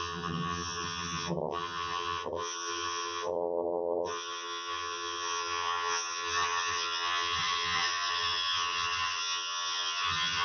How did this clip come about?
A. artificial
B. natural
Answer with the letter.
A